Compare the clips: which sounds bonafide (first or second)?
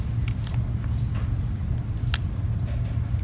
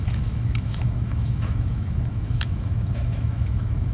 first